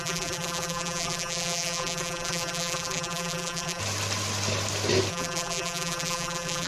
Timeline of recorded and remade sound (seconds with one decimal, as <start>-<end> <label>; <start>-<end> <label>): 0.0-3.8 remade; 3.8-5.1 recorded; 5.1-6.7 remade